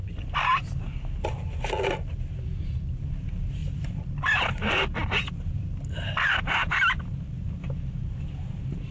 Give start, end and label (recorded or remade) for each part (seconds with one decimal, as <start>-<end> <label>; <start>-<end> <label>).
0.0-8.9 recorded

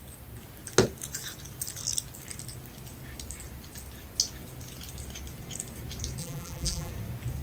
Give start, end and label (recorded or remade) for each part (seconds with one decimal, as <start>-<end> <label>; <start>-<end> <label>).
0.0-6.2 recorded; 6.2-6.9 remade; 6.9-7.4 recorded

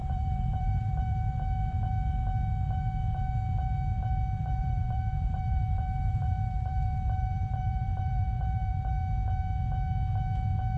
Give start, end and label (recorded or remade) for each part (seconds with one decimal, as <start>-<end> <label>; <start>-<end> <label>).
0.0-1.3 remade; 1.3-4.6 recorded; 4.6-8.9 remade; 8.9-10.8 recorded

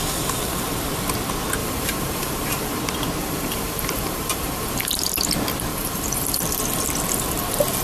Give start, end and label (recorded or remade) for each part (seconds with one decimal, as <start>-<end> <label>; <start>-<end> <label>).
0.0-1.6 recorded; 1.6-2.8 remade; 2.8-3.2 recorded; 3.2-4.9 remade; 4.9-5.7 recorded; 5.7-6.4 remade; 6.4-7.8 recorded